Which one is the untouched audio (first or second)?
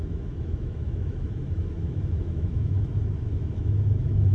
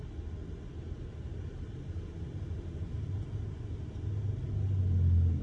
second